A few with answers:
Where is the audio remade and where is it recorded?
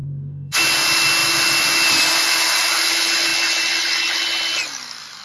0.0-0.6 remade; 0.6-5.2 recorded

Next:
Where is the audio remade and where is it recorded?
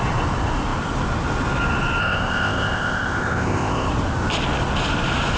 0.0-2.0 recorded; 2.0-3.9 remade; 3.9-5.4 recorded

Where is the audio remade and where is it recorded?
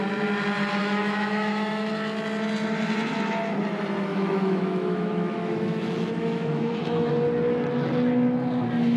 0.0-0.8 recorded; 0.8-1.9 remade; 1.9-4.1 recorded; 4.1-7.1 remade; 7.1-9.0 recorded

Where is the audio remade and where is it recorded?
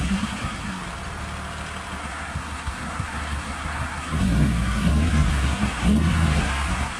0.0-0.8 remade; 0.8-2.0 recorded; 2.0-7.0 remade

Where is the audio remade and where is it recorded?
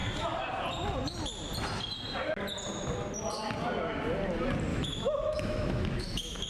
0.0-4.7 recorded; 4.7-6.5 remade